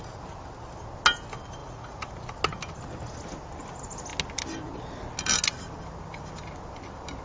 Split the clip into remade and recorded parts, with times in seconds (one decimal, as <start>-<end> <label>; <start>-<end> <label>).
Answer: 0.0-1.6 recorded; 1.6-2.1 remade; 2.1-7.2 recorded